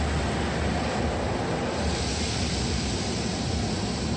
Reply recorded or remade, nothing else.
recorded